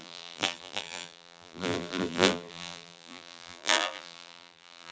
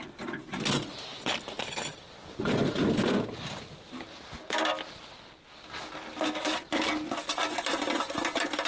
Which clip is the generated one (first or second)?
first